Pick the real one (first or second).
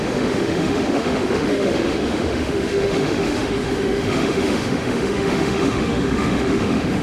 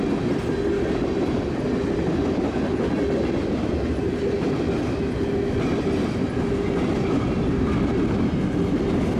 second